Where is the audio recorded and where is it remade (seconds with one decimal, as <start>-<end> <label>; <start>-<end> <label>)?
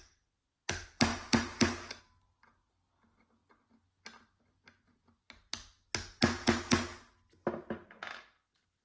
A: 0.0-8.8 recorded